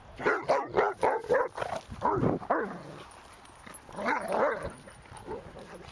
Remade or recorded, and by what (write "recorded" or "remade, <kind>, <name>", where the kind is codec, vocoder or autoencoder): recorded